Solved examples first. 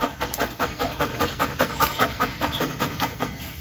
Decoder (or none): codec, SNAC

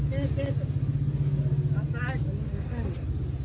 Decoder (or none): none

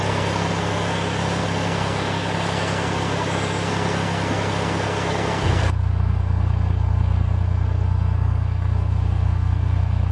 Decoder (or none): codec, SNAC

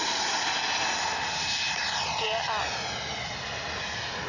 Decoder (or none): none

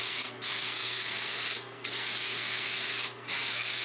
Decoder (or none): codec, SNAC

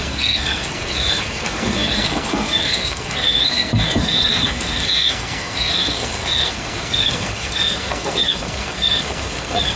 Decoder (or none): codec, SNAC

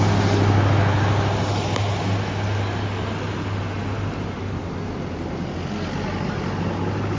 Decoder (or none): none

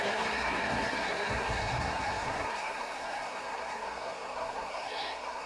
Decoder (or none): codec, SNAC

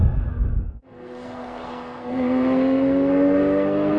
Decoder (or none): codec, SNAC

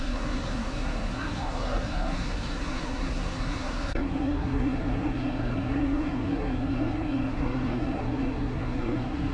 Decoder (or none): codec, SNAC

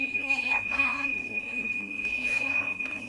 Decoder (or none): codec, SNAC